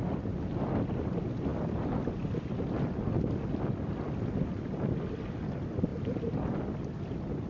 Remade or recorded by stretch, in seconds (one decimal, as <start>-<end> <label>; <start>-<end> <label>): 0.0-7.5 recorded